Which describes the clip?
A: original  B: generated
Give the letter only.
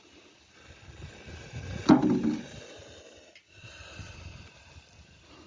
A